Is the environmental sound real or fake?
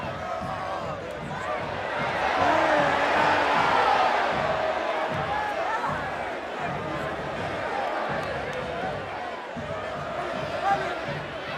real